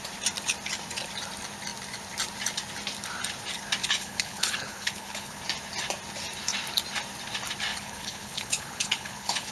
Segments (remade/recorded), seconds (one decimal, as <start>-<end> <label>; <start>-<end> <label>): 0.0-3.8 recorded; 3.8-5.4 remade; 5.4-7.7 recorded; 7.7-9.5 remade